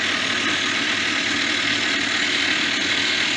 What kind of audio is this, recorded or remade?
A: recorded